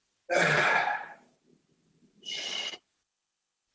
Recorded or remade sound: recorded